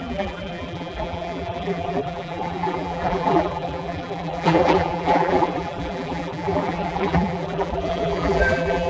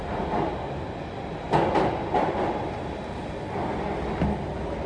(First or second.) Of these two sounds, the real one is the second